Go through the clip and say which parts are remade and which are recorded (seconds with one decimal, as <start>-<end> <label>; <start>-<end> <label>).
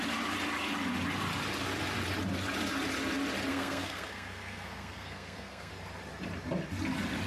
0.0-3.5 recorded; 3.5-5.7 remade; 5.7-7.3 recorded